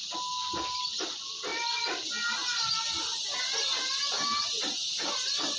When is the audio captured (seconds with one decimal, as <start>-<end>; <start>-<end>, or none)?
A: 0.0-5.6